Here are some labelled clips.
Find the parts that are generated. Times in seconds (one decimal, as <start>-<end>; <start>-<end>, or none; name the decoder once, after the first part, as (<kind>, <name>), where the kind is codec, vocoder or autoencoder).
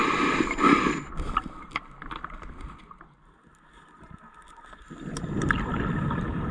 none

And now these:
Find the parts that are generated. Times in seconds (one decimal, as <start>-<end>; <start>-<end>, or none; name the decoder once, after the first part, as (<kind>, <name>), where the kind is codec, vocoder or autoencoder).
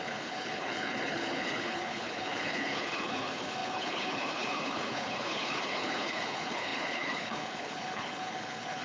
0.0-8.8 (codec, HILCodec)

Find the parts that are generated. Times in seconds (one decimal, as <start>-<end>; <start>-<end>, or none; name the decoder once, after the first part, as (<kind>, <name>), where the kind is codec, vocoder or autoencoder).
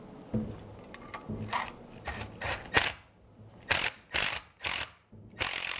none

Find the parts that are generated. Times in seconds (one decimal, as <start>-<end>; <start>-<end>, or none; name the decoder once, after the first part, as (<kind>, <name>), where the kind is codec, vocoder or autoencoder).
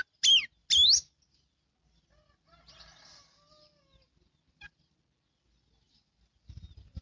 none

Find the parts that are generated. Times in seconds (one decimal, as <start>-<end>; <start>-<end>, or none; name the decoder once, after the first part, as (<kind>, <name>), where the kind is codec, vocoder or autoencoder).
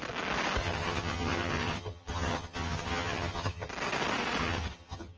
0.6-3.7 (vocoder, HiFi-GAN); 4.4-5.2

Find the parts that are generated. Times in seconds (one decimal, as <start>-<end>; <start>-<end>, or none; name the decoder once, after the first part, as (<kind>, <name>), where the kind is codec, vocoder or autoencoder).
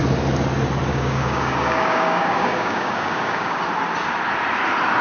0.9-3.6 (codec, DAC)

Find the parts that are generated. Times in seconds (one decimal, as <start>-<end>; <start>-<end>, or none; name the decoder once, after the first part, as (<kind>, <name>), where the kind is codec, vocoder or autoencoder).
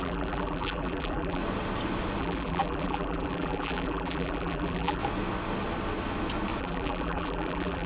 0.0-1.4 (vocoder, BigVGAN v2); 2.2-5.0; 6.6-7.9